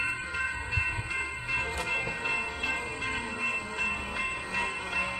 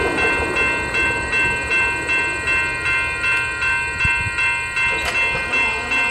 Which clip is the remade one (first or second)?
first